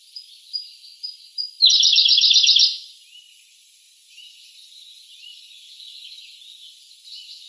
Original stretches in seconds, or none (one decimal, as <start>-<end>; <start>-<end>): 0.9-4.1